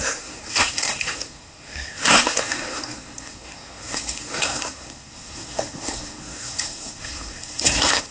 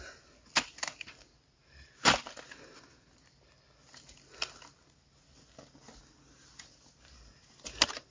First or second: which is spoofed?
first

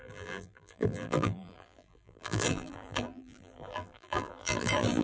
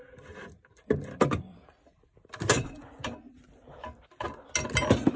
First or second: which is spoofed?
first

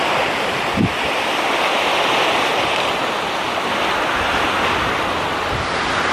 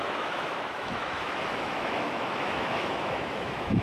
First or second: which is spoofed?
second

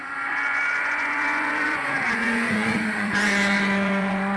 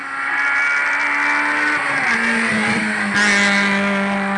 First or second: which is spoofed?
first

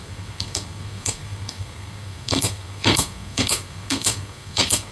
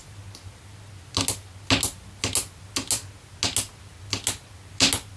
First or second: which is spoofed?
first